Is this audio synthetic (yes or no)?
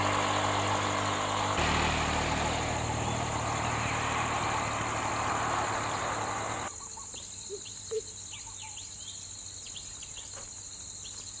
no